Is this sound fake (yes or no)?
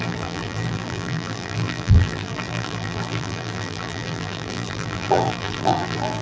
yes